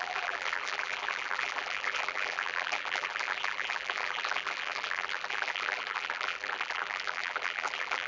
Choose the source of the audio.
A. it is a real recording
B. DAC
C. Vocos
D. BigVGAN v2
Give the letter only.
D